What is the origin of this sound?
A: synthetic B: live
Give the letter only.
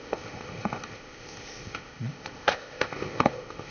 A